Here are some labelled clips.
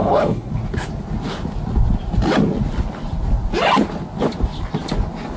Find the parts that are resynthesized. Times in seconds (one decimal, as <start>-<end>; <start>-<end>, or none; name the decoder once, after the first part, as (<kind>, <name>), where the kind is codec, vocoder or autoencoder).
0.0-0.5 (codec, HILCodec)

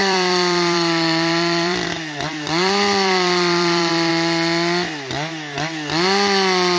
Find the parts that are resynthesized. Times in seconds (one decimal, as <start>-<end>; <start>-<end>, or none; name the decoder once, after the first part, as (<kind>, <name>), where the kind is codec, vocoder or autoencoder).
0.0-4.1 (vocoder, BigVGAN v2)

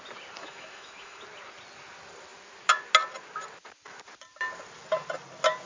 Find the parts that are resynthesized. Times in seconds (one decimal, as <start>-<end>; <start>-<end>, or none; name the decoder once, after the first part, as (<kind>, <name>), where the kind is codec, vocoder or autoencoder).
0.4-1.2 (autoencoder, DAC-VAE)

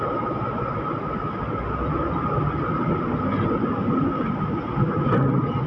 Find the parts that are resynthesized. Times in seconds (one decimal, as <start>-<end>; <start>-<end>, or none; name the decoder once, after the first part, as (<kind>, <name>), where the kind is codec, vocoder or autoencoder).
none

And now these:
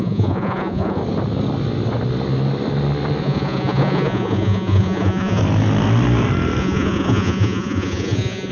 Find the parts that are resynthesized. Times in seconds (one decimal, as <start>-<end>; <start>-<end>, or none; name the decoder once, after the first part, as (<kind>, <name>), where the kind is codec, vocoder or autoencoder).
0.0-1.0 (vocoder, Vocos); 3.2-5.4; 6.6-8.5

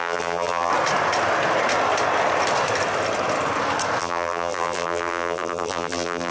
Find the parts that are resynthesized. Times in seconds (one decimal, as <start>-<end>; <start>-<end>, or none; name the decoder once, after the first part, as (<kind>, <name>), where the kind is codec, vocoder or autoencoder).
0.0-0.7 (vocoder, BigVGAN v2); 4.0-6.3